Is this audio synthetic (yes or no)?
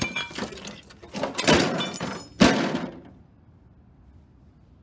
no